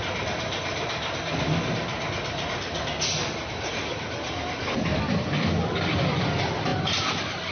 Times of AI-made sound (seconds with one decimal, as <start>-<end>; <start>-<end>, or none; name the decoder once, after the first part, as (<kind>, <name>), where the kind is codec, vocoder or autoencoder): none